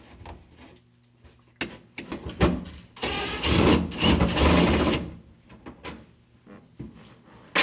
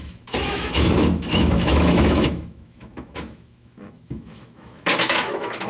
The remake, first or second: second